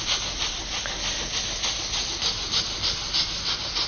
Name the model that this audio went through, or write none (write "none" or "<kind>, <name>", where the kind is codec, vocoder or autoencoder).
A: none